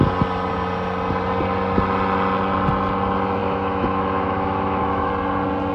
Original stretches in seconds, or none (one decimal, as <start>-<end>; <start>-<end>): 0.0-3.4; 5.1-5.7